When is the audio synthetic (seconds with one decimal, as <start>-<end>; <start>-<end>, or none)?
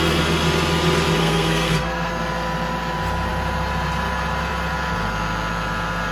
1.2-2.1